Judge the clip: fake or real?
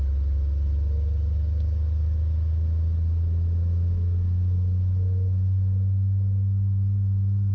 real